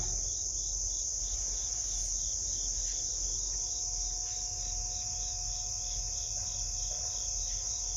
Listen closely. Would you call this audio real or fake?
real